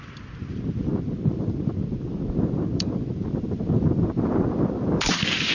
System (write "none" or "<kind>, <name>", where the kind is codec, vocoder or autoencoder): vocoder, BigVGAN v2